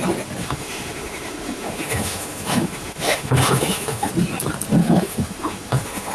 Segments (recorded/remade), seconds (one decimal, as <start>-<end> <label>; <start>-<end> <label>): 0.0-0.4 recorded; 0.4-4.1 remade; 4.1-4.8 recorded; 4.8-6.1 remade